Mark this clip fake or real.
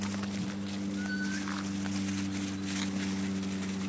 real